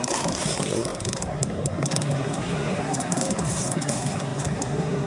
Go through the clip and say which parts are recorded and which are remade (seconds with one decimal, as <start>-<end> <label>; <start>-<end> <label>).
0.0-5.1 remade